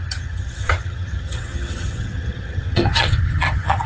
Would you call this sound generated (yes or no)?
yes